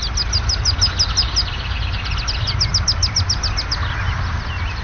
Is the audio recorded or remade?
recorded